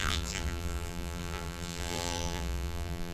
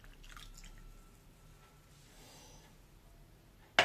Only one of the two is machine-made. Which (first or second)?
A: first